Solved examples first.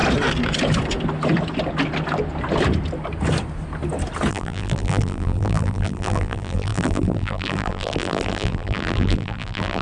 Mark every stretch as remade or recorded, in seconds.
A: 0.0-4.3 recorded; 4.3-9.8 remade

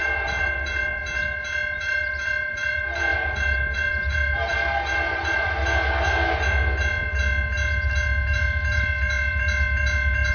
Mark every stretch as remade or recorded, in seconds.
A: 0.0-1.0 remade; 1.0-1.8 recorded; 1.8-5.6 remade; 5.6-10.3 recorded

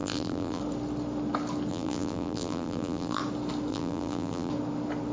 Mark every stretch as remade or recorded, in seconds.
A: 0.0-0.6 remade; 0.6-1.7 recorded; 1.7-3.2 remade; 3.2-3.7 recorded; 3.7-4.5 remade; 4.5-5.1 recorded

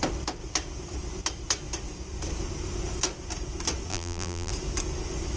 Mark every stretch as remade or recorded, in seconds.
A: 0.0-3.9 recorded; 3.9-4.5 remade; 4.5-5.4 recorded